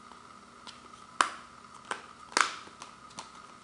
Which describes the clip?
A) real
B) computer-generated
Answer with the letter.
A